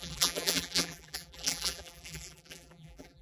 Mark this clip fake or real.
fake